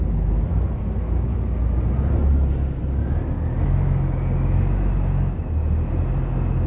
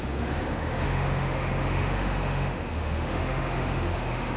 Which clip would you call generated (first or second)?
second